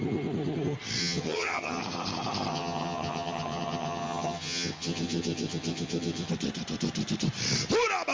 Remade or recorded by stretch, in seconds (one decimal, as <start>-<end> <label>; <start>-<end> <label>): 0.0-1.0 recorded; 1.0-1.8 remade; 1.8-2.5 recorded; 2.5-6.3 remade; 6.3-8.1 recorded

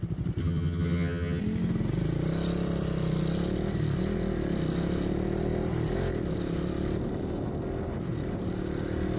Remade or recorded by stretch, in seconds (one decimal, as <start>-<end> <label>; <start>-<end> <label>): 0.0-0.4 recorded; 0.4-1.4 remade; 1.4-9.2 recorded